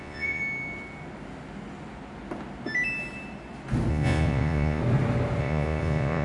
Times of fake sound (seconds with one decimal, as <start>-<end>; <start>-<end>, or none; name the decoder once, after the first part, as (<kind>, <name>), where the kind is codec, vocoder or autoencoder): 0.0-0.4 (vocoder, Vocos); 3.9-4.8; 5.4-6.2